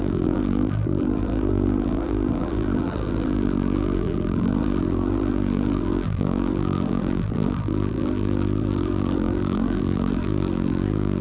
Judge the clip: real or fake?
fake